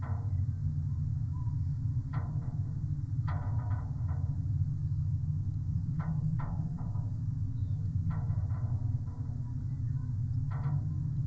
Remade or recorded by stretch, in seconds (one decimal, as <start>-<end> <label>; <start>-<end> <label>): 0.0-4.8 recorded; 4.8-8.1 remade; 8.1-11.3 recorded